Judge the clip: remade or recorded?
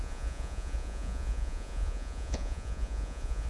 remade